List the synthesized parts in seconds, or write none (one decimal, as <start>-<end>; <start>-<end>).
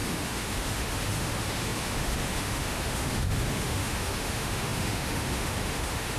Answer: 0.0-6.2